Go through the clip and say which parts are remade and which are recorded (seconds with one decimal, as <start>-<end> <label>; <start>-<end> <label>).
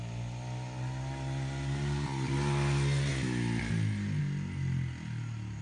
0.0-5.6 recorded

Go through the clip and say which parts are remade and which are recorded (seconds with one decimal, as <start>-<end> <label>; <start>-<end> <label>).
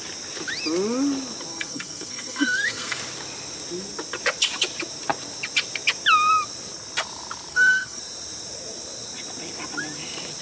0.0-1.5 recorded; 1.5-3.0 remade; 3.0-7.5 recorded; 7.5-8.0 remade; 8.0-10.4 recorded